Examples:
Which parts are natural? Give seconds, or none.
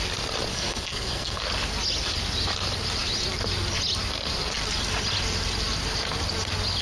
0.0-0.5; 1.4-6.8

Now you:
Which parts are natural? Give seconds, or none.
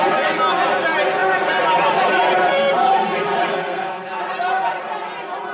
0.0-3.5; 4.2-5.5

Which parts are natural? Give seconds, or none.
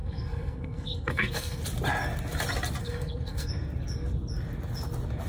1.6-2.8; 3.5-5.3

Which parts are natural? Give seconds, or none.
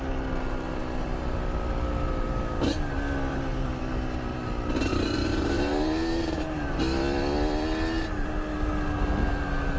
0.0-3.3; 3.8-4.9; 6.8-9.8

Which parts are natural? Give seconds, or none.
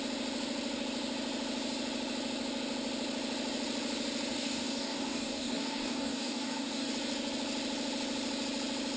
0.0-4.3; 6.9-9.0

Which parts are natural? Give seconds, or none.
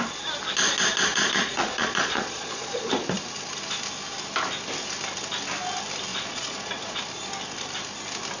0.0-1.1; 2.8-6.1; 7.0-8.4